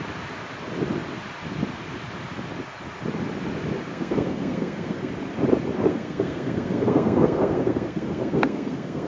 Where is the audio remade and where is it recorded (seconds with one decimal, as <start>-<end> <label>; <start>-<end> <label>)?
0.0-3.9 recorded; 3.9-5.1 remade; 5.1-5.9 recorded; 5.9-9.1 remade